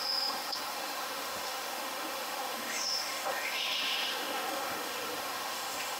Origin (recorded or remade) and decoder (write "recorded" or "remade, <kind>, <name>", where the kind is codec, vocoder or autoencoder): remade, autoencoder, DAC-VAE